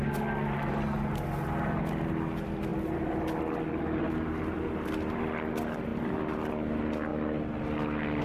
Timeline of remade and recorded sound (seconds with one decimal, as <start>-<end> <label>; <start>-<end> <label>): 0.0-8.2 recorded